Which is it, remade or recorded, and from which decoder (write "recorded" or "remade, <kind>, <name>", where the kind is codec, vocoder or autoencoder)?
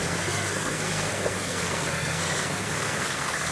remade, codec, SNAC